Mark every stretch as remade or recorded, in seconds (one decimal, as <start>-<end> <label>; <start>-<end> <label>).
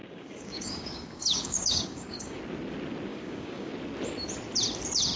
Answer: 0.0-2.4 remade; 2.4-3.1 recorded; 3.1-3.7 remade; 3.7-5.2 recorded